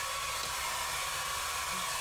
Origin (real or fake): real